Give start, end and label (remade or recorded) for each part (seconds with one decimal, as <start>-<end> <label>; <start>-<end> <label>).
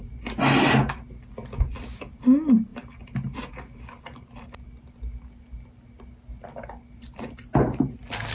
0.0-8.3 recorded